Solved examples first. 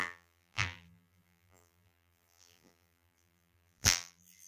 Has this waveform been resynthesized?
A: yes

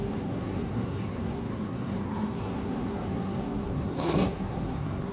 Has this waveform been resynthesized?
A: yes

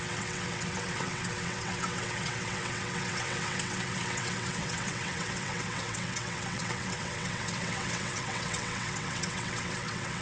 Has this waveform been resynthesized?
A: yes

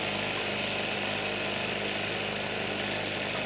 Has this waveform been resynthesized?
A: no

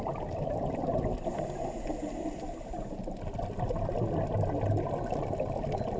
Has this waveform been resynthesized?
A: no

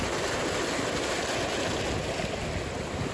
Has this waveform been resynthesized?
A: no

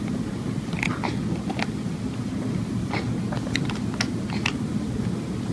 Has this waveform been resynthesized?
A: no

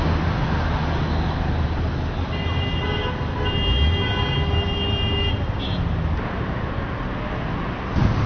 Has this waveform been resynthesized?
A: no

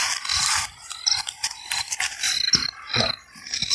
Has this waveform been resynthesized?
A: no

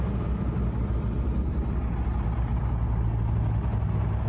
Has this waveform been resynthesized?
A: no